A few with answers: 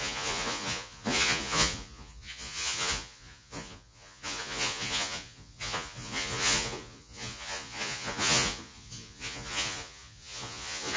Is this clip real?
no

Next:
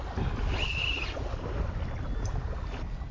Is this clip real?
yes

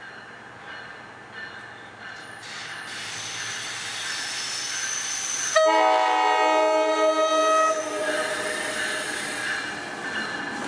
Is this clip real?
yes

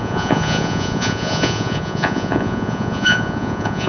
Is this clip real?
no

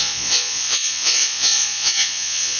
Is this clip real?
no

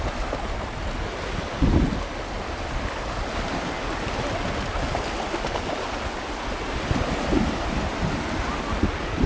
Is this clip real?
yes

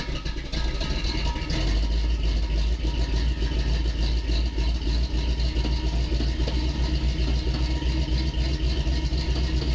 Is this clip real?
yes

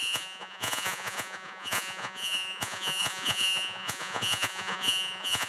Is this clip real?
no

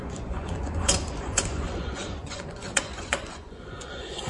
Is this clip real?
no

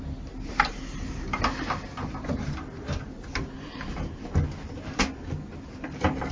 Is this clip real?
yes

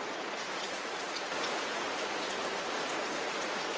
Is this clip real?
no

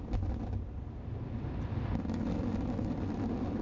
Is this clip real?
yes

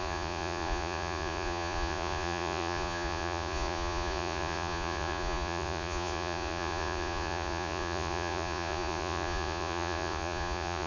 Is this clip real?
no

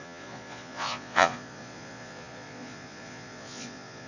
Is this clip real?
no